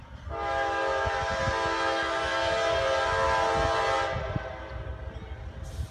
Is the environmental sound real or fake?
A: real